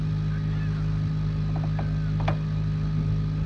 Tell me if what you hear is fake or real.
real